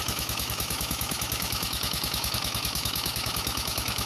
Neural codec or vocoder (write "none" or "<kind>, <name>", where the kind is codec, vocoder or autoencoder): autoencoder, DAC-VAE